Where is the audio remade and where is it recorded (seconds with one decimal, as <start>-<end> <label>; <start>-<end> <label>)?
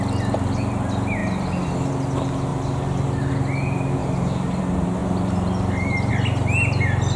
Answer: 0.0-2.5 recorded; 2.5-3.3 remade; 3.3-4.0 recorded; 4.0-4.6 remade; 4.6-5.0 recorded; 5.0-6.1 remade; 6.1-7.2 recorded